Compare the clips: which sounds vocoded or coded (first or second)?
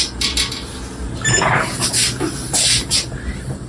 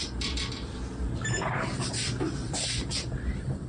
second